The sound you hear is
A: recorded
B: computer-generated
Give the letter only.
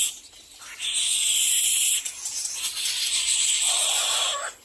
A